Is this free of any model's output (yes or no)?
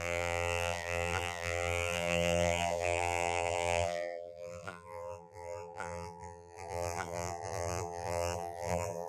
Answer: no